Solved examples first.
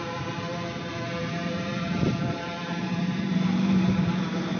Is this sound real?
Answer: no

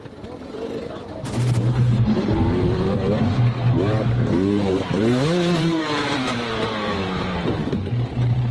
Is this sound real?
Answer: no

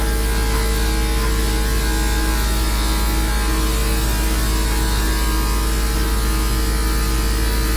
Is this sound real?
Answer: yes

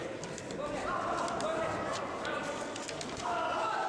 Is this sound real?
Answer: yes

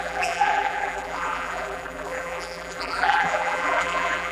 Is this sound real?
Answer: no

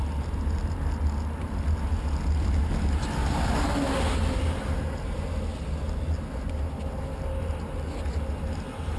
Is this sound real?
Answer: yes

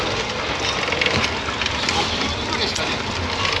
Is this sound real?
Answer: yes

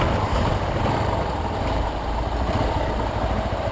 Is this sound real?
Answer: no